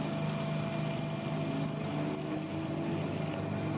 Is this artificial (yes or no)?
no